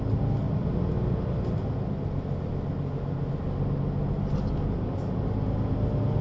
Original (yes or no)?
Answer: yes